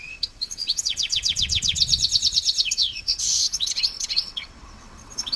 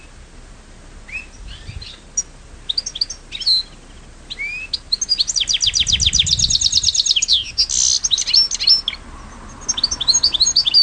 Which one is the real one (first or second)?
second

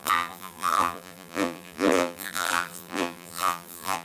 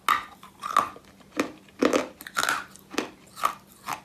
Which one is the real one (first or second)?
second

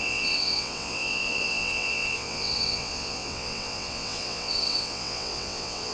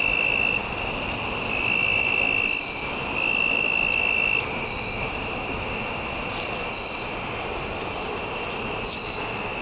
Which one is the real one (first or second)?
second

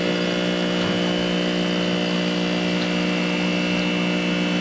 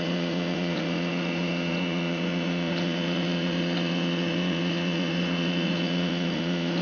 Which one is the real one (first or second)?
first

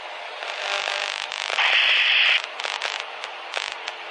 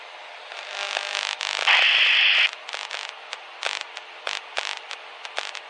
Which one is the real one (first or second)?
second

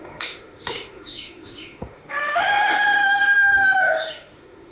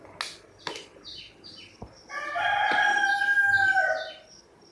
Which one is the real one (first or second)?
second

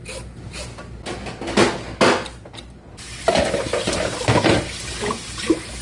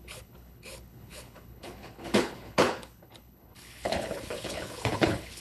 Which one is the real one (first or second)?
first